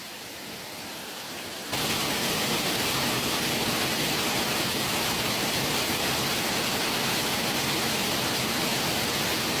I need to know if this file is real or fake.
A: real